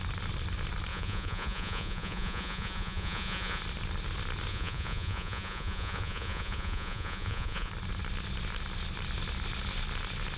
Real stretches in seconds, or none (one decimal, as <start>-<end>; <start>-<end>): 0.0-0.9; 3.6-4.5; 7.7-10.4